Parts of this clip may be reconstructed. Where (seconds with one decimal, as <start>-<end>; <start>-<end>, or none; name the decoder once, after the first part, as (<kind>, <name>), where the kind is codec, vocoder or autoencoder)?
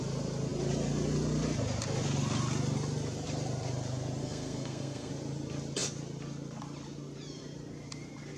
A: 4.2-5.1 (codec, SNAC)